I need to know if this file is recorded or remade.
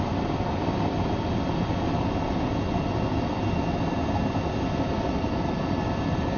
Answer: recorded